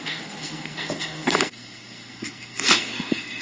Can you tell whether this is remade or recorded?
remade